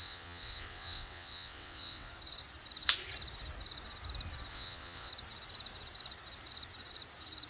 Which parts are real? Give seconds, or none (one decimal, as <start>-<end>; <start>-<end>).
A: 2.1-4.5; 5.1-7.5